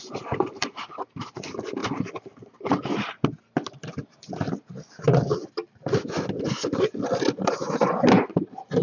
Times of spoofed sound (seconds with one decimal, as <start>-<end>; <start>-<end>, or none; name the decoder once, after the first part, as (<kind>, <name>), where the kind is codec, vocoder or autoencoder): none